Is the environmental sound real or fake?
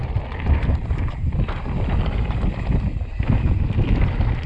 real